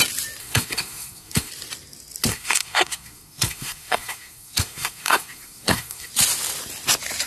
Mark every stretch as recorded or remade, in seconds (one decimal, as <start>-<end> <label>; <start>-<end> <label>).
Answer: 0.0-0.4 recorded; 0.4-1.5 remade; 1.5-2.3 recorded; 2.3-6.1 remade; 6.1-7.3 recorded